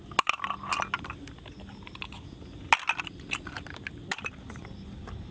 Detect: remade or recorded recorded